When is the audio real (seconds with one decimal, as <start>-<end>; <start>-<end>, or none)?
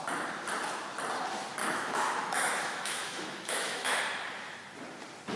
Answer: 0.0-1.6; 4.0-5.4